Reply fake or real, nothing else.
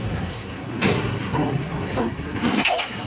fake